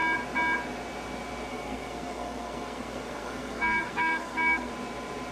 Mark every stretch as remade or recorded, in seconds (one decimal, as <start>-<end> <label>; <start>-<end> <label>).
0.0-1.5 recorded; 1.5-4.7 remade; 4.7-5.3 recorded